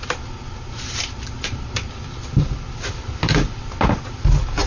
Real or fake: real